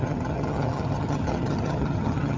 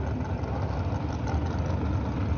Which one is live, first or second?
second